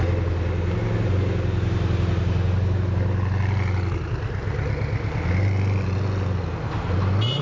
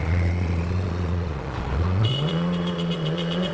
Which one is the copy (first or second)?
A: second